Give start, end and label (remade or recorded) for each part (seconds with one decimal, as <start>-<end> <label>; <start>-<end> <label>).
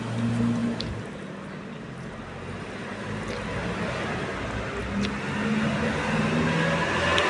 0.0-7.3 recorded